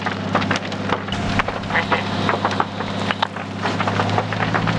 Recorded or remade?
recorded